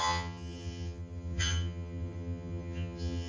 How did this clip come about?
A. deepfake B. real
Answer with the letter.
A